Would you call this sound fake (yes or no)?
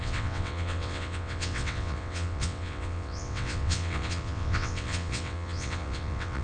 yes